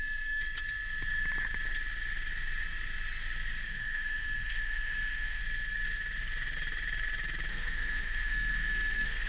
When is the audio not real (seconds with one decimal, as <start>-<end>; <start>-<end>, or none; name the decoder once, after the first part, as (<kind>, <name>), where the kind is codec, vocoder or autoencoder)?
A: 0.0-0.4 (codec, SNAC); 3.7-5.4; 7.5-9.3